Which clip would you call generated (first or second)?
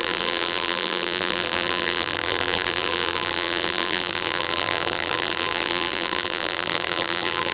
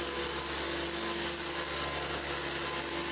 first